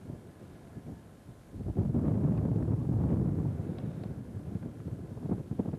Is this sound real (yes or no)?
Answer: yes